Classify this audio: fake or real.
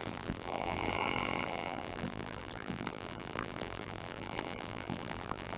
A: fake